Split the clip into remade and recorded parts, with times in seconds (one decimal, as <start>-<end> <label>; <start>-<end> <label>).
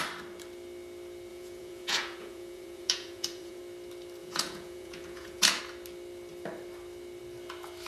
0.0-1.3 recorded; 1.3-3.6 remade; 3.6-4.2 recorded; 4.2-5.6 remade; 5.6-7.9 recorded